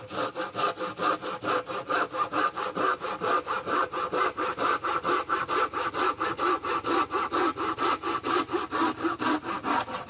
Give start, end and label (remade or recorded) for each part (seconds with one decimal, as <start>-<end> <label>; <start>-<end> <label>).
0.0-2.9 recorded; 2.9-6.3 remade; 6.3-10.1 recorded